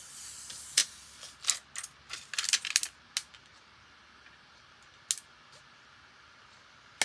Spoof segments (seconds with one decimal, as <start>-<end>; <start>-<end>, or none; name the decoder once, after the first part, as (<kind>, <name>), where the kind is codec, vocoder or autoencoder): none